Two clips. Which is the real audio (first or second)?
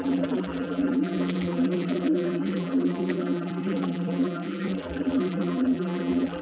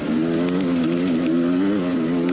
second